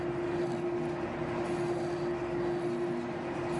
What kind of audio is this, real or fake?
real